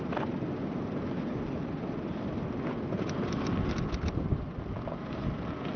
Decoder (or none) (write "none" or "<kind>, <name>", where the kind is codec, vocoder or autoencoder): none